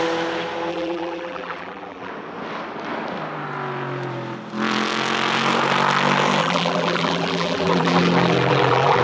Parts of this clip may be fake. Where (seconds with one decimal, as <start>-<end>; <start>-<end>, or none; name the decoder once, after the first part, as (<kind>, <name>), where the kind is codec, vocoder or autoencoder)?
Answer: 0.7-2.1 (vocoder, BigVGAN v2); 6.4-9.0